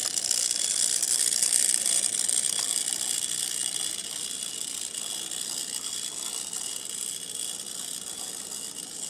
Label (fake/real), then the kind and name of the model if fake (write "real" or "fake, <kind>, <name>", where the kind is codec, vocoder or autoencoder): real